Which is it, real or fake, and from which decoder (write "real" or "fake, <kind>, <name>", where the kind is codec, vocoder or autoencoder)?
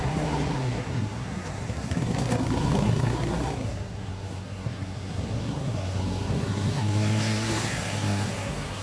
fake, codec, SNAC